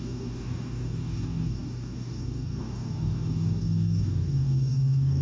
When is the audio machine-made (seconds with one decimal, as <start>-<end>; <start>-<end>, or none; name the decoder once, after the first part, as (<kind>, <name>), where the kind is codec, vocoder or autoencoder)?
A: 0.0-5.2 (codec, DAC)